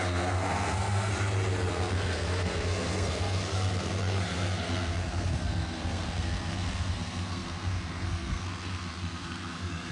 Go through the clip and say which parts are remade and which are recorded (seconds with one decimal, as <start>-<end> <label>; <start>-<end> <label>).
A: 0.0-1.1 remade; 1.1-1.7 recorded; 1.7-9.9 remade